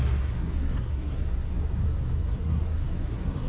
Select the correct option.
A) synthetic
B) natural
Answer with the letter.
A